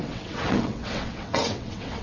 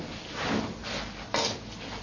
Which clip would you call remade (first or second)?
first